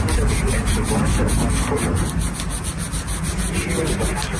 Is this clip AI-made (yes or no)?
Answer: no